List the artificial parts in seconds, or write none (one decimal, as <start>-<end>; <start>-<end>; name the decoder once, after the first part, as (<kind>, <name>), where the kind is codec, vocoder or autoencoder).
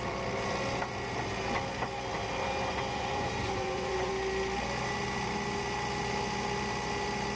2.4-4.1 (vocoder, Vocos)